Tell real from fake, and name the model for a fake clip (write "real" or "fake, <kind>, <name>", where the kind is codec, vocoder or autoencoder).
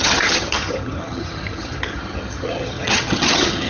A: fake, vocoder, HiFi-GAN